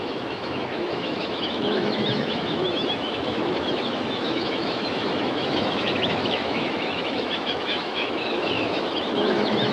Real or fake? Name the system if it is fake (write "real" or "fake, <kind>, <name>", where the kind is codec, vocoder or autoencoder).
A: fake, autoencoder, DAC-VAE